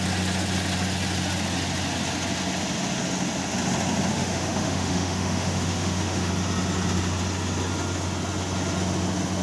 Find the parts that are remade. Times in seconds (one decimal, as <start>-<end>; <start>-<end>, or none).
4.1-6.3